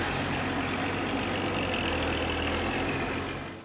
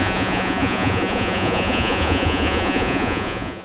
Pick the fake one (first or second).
second